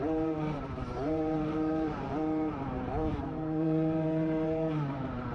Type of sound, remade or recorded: remade